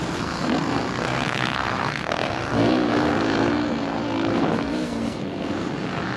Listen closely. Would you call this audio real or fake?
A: fake